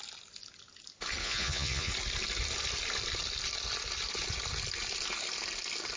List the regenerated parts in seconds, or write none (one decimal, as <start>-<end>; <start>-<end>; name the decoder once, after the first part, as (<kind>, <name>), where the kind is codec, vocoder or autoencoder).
1.2-1.9 (vocoder, Vocos)